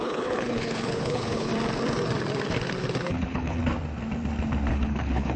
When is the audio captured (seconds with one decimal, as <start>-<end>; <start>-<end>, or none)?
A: 1.5-3.0; 3.6-4.7

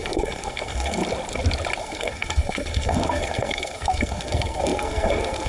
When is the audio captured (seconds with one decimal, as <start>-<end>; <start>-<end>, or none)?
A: 1.0-1.8